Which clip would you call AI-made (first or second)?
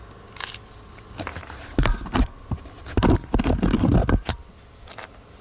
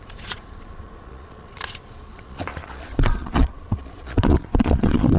second